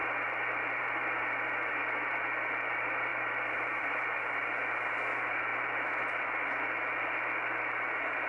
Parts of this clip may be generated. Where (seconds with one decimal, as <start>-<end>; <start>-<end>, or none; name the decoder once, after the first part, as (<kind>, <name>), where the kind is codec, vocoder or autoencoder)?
3.1-3.8 (vocoder, BigVGAN v2)